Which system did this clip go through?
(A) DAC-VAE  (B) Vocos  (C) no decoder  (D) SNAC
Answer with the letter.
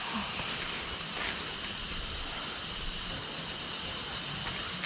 C